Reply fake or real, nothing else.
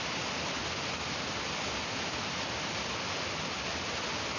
real